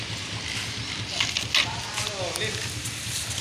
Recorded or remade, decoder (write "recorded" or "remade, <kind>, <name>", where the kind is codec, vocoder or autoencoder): recorded